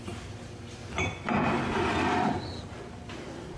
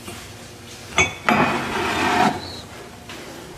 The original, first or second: second